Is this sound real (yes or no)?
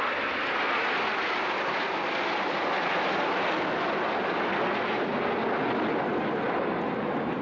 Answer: yes